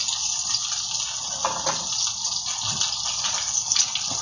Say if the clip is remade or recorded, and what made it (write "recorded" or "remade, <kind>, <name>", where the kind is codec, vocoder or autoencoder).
recorded